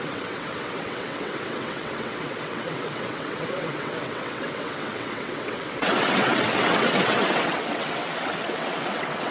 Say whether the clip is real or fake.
fake